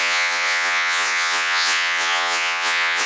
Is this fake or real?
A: fake